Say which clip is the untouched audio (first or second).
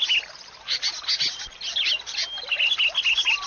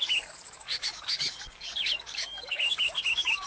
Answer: first